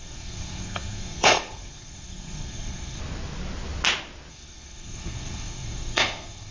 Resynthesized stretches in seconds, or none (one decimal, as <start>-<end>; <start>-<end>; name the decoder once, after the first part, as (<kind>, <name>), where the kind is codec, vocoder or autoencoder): 0.0-3.0 (codec, SNAC); 4.3-6.5